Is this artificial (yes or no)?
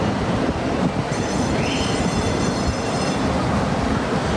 no